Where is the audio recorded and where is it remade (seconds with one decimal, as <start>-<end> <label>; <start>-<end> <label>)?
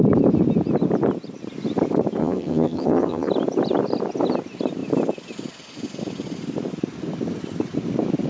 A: 0.0-2.2 recorded; 2.2-3.3 remade; 3.3-8.3 recorded